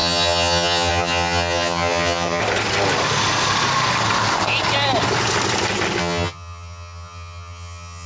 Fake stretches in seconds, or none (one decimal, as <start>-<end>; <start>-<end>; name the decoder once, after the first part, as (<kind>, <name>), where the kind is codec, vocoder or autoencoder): 0.0-2.4 (vocoder, HiFi-GAN); 6.0-8.1